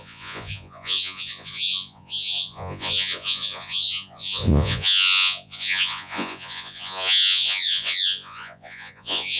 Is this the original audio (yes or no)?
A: no